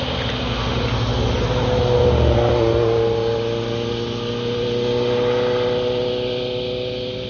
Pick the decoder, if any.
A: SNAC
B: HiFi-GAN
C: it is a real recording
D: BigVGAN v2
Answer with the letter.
C